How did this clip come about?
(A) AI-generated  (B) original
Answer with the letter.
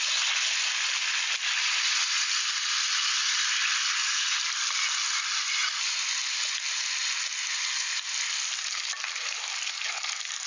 B